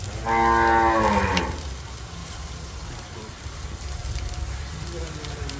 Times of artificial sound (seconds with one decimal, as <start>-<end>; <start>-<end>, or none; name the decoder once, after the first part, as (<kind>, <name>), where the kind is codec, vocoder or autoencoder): 2.2-3.3 (vocoder, BigVGAN v2); 4.0-5.6